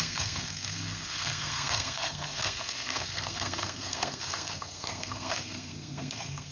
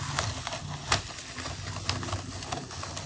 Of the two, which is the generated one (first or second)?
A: first